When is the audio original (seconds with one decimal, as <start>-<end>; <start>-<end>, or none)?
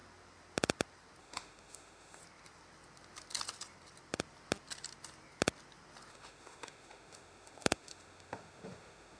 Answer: 0.0-1.2; 2.2-6.1